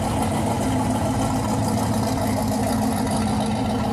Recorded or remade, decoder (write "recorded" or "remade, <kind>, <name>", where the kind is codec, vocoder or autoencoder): recorded